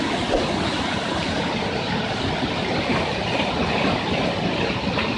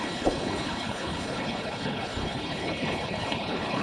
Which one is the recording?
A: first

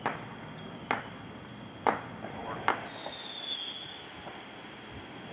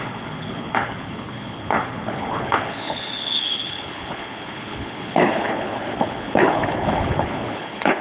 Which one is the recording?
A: first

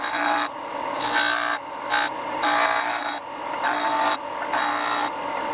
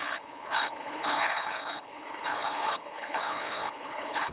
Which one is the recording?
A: first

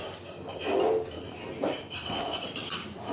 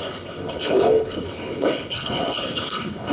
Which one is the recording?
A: first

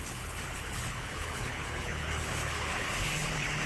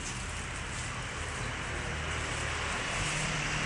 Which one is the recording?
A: second